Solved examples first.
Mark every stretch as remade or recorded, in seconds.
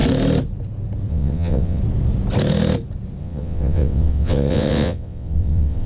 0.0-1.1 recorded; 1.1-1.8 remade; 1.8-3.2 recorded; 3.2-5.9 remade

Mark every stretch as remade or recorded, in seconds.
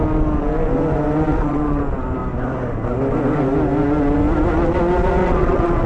0.0-1.3 recorded; 1.3-1.8 remade; 1.8-5.2 recorded; 5.2-5.9 remade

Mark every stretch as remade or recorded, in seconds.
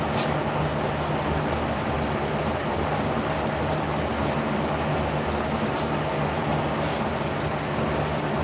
0.0-8.4 recorded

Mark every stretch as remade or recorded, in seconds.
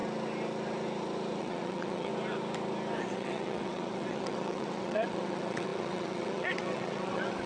0.0-1.4 recorded; 1.4-2.1 remade; 2.1-3.0 recorded; 3.0-7.5 remade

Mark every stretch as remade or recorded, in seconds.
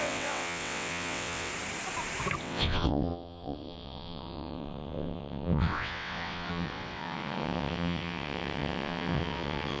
0.0-1.5 remade; 1.5-2.4 recorded; 2.4-9.8 remade